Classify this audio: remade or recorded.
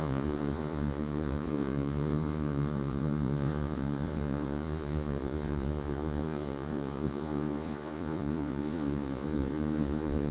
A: remade